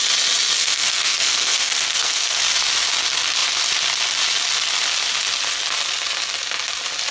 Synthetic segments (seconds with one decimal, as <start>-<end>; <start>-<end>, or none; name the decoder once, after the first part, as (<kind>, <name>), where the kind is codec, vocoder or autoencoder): 0.6-2.4 (codec, SNAC)